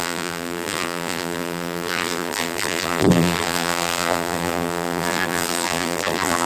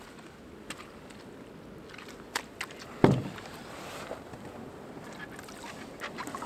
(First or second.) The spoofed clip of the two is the first